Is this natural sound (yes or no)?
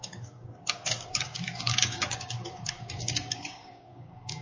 no